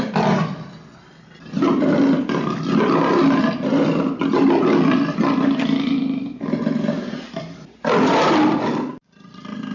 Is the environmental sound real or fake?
real